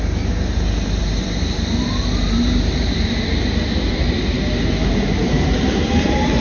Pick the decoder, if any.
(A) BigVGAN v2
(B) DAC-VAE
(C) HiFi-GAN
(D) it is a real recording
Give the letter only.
A